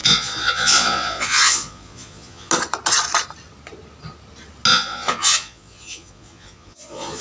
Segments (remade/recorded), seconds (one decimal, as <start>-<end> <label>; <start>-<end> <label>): 0.0-2.5 remade; 2.5-4.7 recorded; 4.7-7.2 remade